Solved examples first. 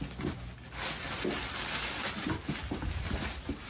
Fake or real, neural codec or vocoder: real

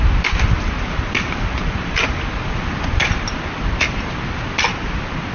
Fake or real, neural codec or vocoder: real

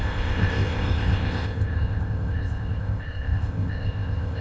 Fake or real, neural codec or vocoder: fake, codec, ZipCodec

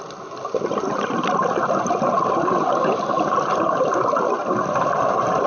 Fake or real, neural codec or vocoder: real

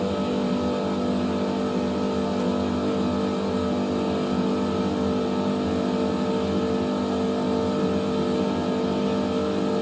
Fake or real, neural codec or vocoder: real